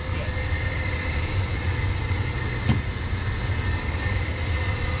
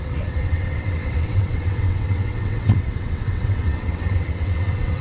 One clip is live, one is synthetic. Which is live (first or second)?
first